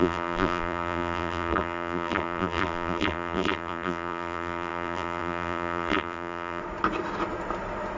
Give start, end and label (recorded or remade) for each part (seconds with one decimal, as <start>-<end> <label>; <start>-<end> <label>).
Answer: 0.0-6.6 remade; 6.6-8.0 recorded